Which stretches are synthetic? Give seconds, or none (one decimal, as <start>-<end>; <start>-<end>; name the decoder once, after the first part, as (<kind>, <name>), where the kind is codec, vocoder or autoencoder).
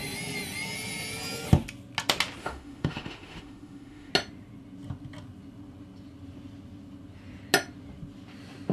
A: 2.4-4.1 (autoencoder, DAC-VAE)